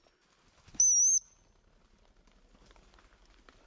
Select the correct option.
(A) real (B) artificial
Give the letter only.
A